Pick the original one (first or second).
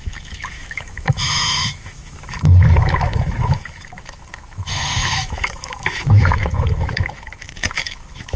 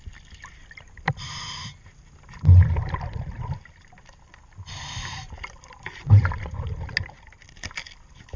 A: second